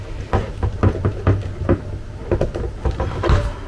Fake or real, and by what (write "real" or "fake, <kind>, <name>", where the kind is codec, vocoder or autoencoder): real